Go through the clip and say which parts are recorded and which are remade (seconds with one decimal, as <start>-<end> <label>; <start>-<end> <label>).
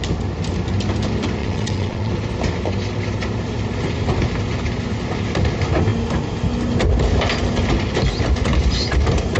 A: 0.0-1.4 recorded; 1.4-2.1 remade; 2.1-9.4 recorded